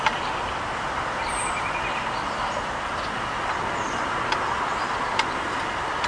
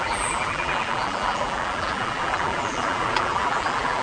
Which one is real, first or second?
first